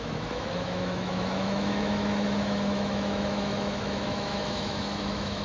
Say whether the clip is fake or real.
fake